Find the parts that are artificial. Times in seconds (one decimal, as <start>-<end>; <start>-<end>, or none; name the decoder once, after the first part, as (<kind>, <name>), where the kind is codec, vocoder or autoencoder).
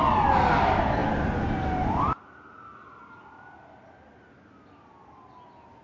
none